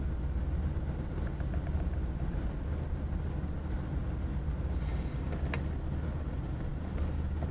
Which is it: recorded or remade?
recorded